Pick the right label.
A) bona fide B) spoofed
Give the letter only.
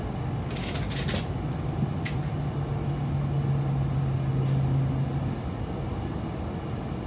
A